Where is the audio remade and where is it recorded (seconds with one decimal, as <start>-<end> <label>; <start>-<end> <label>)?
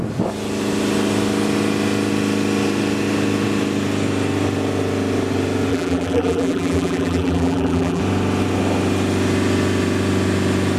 0.0-5.7 recorded; 5.7-8.0 remade; 8.0-10.8 recorded